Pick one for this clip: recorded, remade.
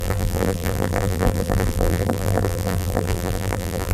remade